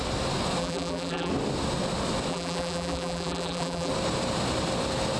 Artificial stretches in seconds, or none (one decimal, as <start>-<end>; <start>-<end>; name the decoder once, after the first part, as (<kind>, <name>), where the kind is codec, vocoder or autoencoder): 0.6-1.3 (vocoder, BigVGAN v2); 2.3-3.9